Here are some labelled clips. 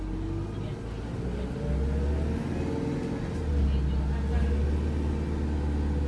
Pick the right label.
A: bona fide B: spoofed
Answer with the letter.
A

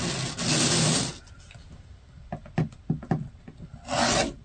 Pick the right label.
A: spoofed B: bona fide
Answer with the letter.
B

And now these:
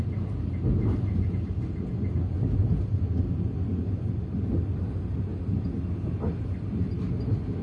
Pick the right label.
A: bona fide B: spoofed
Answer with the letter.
A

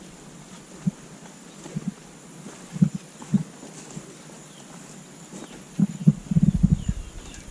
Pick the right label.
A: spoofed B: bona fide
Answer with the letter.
B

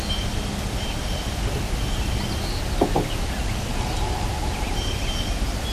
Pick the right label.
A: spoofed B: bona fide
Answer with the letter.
B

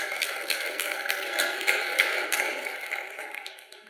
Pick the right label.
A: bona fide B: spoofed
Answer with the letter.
B